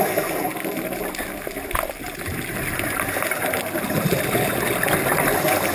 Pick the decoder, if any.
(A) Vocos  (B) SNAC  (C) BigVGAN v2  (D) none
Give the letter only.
D